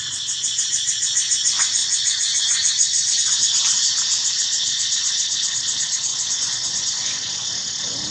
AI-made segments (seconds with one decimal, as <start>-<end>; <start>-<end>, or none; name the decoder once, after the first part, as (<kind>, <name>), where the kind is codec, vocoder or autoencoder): 1.8-3.1 (vocoder, Vocos); 6.1-7.5

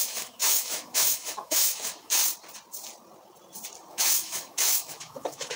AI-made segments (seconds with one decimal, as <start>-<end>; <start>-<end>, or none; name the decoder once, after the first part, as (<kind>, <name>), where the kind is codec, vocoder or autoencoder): 0.0-2.2 (autoencoder, DAC-VAE); 3.9-5.6